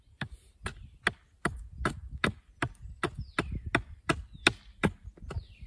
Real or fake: real